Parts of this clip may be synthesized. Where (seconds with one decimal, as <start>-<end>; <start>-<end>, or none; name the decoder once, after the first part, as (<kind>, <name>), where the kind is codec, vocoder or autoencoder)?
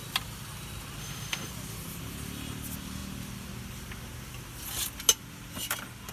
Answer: 1.0-1.5 (autoencoder, DAC-VAE)